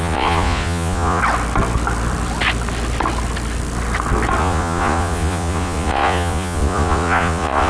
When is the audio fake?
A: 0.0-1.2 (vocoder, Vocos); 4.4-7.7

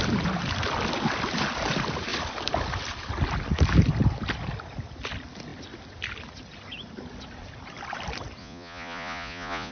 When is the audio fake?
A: 8.4-9.7 (vocoder, Vocos)

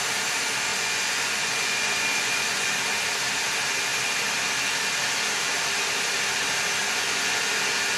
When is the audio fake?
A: 0.7-2.8 (vocoder, Vocos); 6.8-7.4

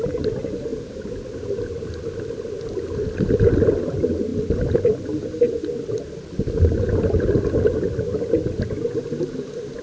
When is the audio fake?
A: none

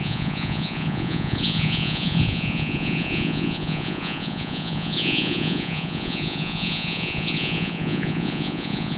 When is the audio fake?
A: 0.0-9.0 (vocoder, Vocos)

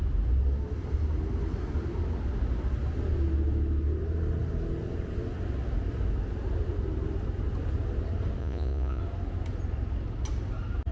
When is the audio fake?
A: 8.4-9.0 (vocoder, Vocos)